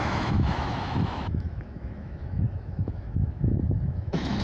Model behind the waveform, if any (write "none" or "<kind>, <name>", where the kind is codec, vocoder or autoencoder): autoencoder, DAC-VAE